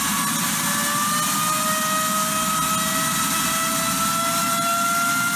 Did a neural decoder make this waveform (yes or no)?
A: no